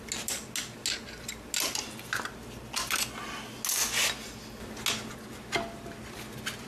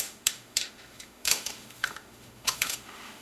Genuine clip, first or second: first